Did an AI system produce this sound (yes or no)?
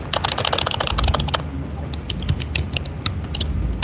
no